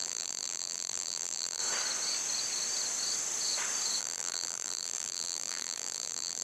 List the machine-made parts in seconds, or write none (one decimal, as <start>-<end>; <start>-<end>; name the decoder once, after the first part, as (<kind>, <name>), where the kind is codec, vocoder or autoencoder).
0.0-1.6 (vocoder, BigVGAN v2); 4.0-6.4